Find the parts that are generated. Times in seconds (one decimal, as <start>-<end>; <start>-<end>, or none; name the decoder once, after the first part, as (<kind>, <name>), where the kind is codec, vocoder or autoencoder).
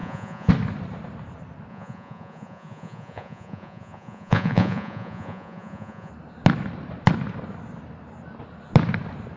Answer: 0.0-0.5 (vocoder, Vocos); 1.7-6.1